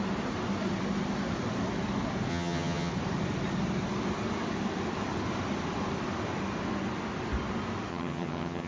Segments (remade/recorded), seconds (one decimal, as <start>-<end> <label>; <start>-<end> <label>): 0.0-2.3 recorded; 2.3-2.9 remade; 2.9-7.9 recorded; 7.9-8.7 remade